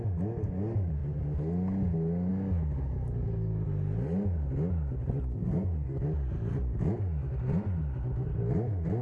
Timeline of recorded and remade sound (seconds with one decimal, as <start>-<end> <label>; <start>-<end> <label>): 0.0-5.4 recorded; 5.4-6.0 remade; 6.0-9.0 recorded